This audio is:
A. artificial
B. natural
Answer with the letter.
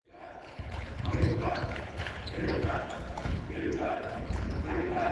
A